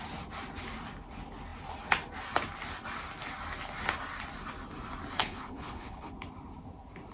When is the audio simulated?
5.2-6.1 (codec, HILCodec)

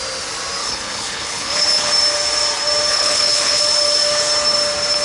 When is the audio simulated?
0.6-1.9 (codec, HILCodec); 2.9-3.6